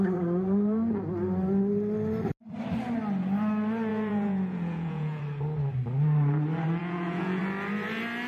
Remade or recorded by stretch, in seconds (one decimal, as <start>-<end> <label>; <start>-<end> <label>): 0.0-3.9 recorded; 3.9-5.2 remade; 5.2-6.8 recorded; 6.8-7.4 remade; 7.4-8.3 recorded